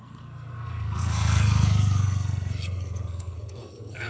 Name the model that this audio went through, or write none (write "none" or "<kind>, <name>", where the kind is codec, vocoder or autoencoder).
codec, SNAC